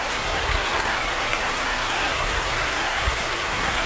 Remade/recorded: remade